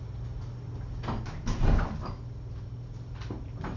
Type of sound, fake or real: real